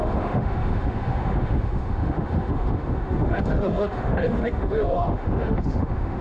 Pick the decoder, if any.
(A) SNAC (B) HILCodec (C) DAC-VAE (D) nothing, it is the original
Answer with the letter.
C